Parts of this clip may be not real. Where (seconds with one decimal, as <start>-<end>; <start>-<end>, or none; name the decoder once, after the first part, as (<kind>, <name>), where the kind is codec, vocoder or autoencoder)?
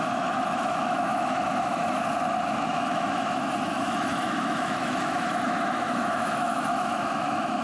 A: 0.0-2.0 (autoencoder, DAC-VAE); 2.7-7.6